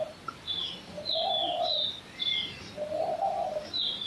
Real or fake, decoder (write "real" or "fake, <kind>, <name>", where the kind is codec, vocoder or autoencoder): real